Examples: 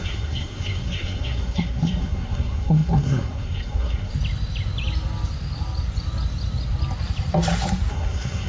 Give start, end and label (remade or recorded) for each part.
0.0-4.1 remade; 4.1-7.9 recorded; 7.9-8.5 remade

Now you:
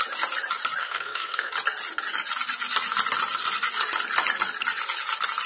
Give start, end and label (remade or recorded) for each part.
0.0-0.8 recorded; 0.8-1.5 remade; 1.5-5.5 recorded